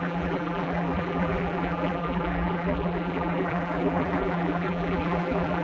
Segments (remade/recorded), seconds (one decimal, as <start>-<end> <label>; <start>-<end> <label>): 0.0-5.6 remade